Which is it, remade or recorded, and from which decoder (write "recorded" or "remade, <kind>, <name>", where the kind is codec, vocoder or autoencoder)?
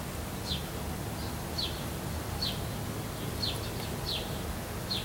recorded